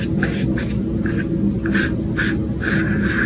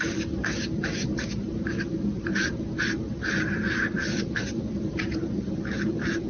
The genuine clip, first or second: first